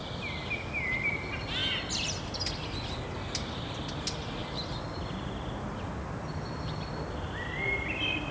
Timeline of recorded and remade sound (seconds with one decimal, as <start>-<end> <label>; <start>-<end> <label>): 0.0-8.3 recorded